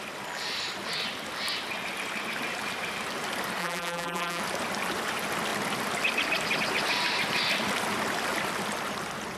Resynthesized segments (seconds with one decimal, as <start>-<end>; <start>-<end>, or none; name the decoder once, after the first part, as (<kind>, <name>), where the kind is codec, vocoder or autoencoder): 3.6-4.4 (vocoder, BigVGAN v2)